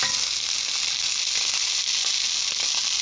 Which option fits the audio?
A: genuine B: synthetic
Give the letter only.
A